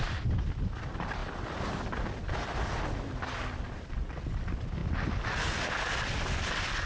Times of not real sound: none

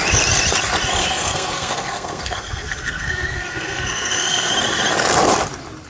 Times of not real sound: 1.0-4.5 (codec, SNAC)

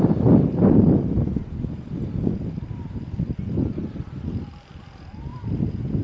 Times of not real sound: none

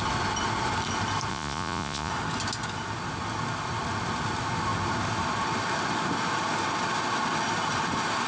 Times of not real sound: 1.3-2.1 (vocoder, Vocos)